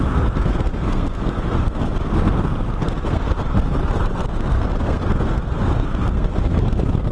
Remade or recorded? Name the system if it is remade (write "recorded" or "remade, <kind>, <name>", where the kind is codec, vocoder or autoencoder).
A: remade, codec, SNAC